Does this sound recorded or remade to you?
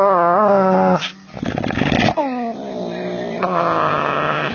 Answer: recorded